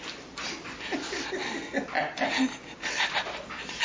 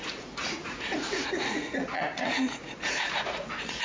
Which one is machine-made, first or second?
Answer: second